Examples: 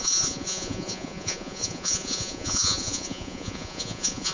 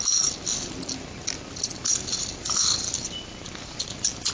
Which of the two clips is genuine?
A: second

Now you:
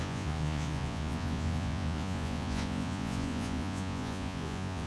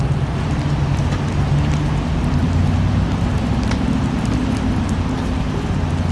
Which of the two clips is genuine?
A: second